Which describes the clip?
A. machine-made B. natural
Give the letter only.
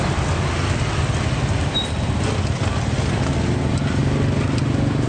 B